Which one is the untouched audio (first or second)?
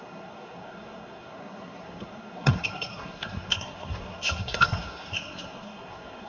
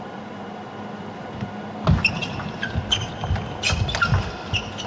second